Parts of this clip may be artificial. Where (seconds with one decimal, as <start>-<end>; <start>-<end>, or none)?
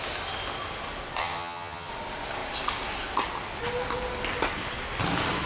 1.2-1.9